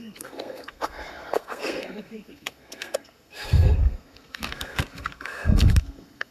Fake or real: fake